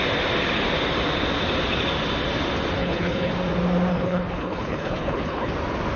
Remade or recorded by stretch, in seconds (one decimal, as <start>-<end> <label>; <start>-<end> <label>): 0.0-2.8 recorded; 2.8-3.3 remade; 3.3-3.9 recorded; 3.9-5.5 remade; 5.5-6.0 recorded